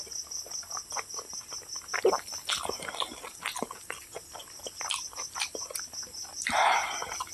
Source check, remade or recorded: recorded